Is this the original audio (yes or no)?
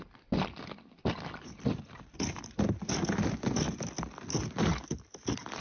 yes